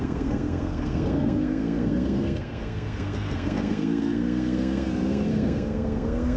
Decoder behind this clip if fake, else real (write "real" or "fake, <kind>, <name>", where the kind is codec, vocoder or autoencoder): fake, codec, SNAC